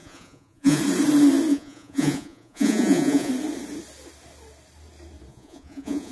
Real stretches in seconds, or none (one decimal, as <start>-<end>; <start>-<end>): 0.8-1.5; 3.3-5.3